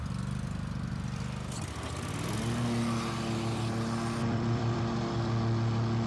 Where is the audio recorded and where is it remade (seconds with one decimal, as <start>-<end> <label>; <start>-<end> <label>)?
0.0-4.2 recorded; 4.2-4.8 remade; 4.8-6.1 recorded